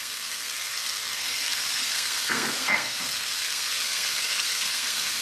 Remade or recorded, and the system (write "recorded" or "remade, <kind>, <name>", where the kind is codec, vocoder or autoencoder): remade, codec, SNAC